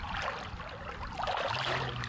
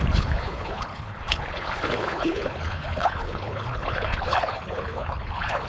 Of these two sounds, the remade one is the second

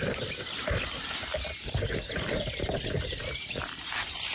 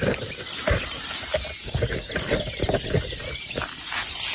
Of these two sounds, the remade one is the first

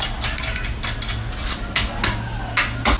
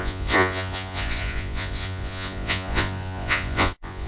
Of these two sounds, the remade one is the second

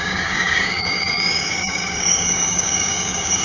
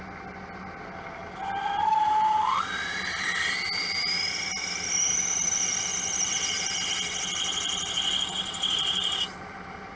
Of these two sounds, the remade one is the first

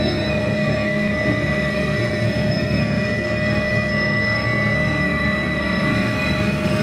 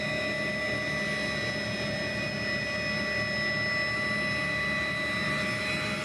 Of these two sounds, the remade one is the first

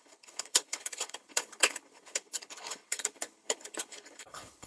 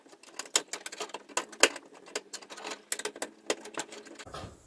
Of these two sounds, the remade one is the first